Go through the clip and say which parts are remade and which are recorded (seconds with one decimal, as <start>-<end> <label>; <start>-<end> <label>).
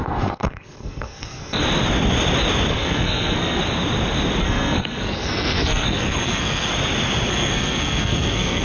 0.0-1.6 remade; 1.6-2.7 recorded; 2.7-3.6 remade; 3.6-4.4 recorded; 4.4-6.7 remade; 6.7-7.3 recorded; 7.3-8.6 remade